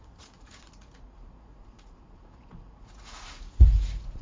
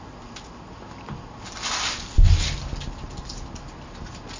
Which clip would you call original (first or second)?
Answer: second